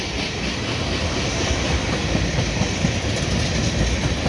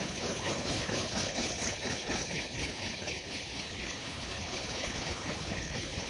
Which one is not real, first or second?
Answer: second